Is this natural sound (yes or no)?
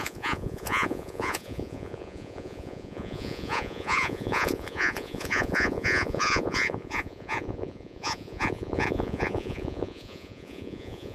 no